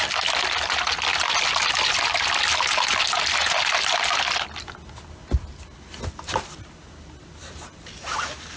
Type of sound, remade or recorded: recorded